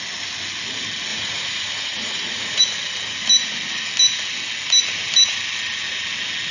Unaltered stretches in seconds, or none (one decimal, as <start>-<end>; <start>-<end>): 0.0-1.1; 2.6-6.5